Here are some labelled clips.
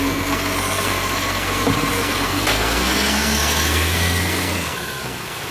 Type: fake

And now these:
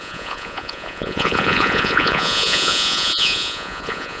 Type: fake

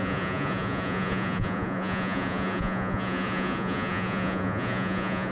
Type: fake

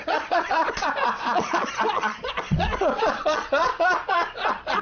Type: fake